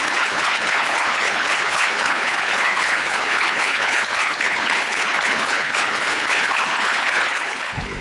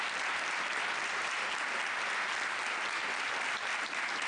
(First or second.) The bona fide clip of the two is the second